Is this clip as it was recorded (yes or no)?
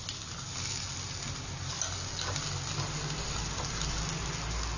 yes